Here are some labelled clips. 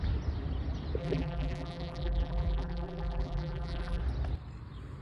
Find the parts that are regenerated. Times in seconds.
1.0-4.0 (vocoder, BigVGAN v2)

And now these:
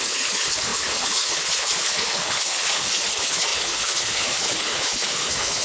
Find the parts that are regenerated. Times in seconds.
0.0-5.6 (codec, HILCodec)

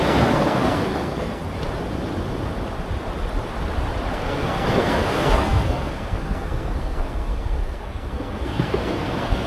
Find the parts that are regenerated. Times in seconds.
0.0-1.4 (codec, SNAC); 4.1-9.5

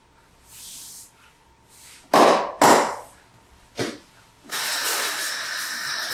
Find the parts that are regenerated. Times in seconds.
none

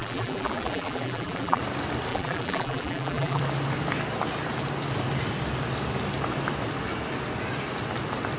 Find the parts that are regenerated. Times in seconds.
0.0-1.6 (vocoder, BigVGAN v2); 2.1-3.4

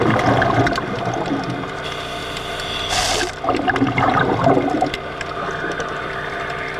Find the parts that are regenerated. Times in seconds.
none

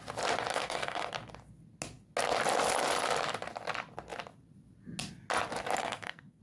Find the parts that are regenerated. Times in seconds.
0.5-1.1 (codec, SNAC); 5.8-6.4

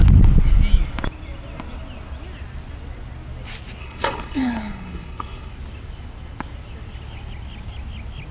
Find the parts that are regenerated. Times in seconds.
3.8-5.5 (codec, HILCodec)